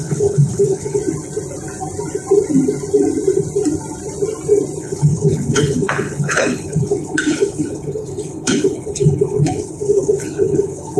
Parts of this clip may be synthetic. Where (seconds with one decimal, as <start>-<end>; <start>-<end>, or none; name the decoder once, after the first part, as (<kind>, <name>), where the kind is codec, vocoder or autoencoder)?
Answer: 0.0-1.0 (codec, HILCodec); 4.8-11.0